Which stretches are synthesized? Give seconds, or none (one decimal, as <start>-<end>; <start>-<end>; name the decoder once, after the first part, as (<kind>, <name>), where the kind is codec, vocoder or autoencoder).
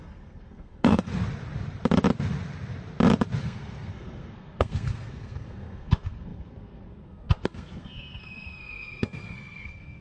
0.0-1.1 (codec, SNAC); 3.4-10.0